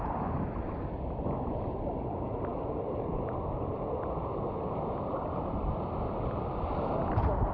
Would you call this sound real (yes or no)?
yes